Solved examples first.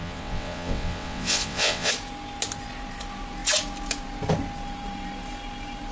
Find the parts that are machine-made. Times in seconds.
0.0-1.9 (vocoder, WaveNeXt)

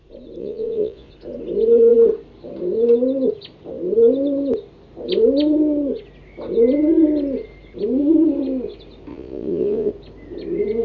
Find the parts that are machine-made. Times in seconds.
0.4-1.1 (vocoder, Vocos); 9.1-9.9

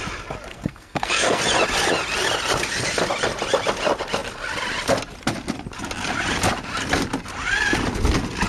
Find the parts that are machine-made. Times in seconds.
0.5-1.4 (codec, SNAC)